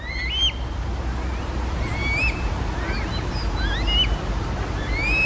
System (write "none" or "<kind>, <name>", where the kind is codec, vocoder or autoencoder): none